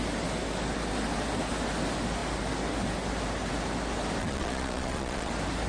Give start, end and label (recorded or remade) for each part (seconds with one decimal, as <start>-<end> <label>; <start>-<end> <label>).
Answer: 0.0-4.2 recorded; 4.2-5.3 remade; 5.3-5.7 recorded